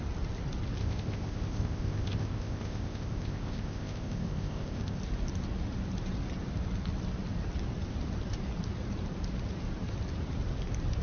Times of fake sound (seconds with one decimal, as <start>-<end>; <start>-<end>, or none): 0.8-5.0